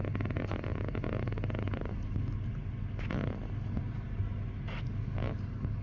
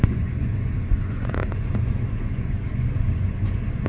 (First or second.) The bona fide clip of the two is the first